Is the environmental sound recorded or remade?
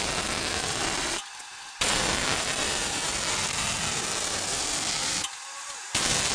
recorded